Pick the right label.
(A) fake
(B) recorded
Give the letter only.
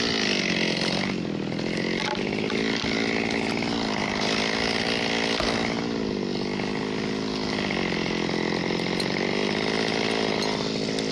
B